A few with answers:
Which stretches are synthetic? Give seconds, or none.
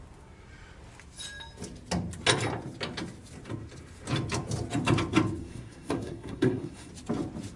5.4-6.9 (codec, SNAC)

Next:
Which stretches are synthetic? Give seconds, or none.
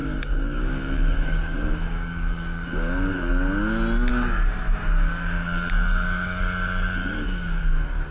0.0-3.3 (codec, DAC); 4.1-6.4; 7.0-7.6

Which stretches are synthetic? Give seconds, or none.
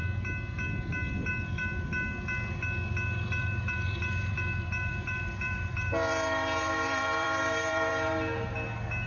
3.4-7.9 (vocoder, BigVGAN v2)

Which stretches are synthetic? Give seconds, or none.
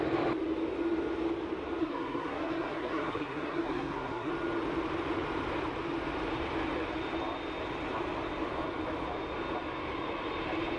1.8-4.3 (codec, SNAC)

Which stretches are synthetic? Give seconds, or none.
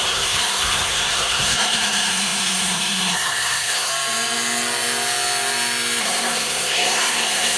0.0-3.9 (codec, SNAC); 6.0-7.6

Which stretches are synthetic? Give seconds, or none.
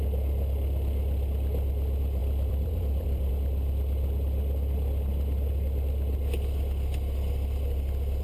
2.2-3.3 (vocoder, BigVGAN v2)